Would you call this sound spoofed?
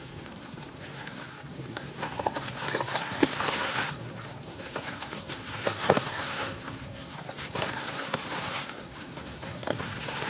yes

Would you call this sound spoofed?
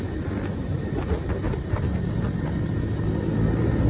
no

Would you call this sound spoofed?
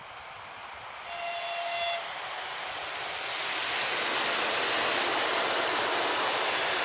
no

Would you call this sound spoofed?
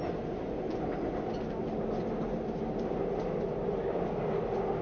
no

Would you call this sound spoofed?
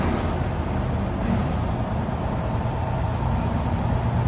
no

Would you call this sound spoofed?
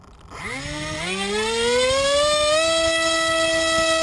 no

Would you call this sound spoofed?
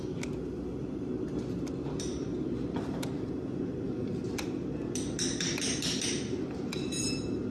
no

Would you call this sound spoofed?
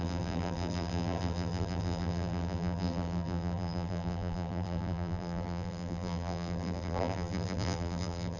yes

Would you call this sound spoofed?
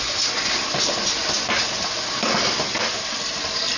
no